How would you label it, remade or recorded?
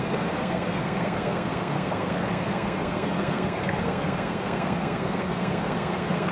remade